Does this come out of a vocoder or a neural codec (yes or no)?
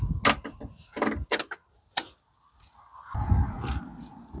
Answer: no